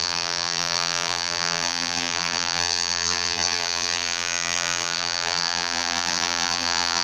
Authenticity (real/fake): fake